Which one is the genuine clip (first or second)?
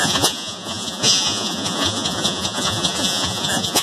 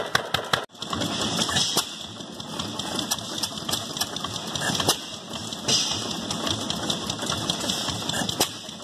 second